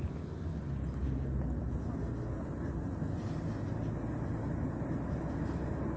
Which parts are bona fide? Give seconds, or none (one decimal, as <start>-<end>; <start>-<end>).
0.5-4.1